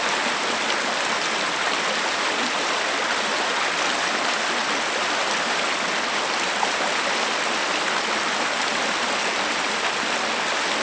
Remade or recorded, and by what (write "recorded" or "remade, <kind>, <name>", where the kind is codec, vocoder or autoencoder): recorded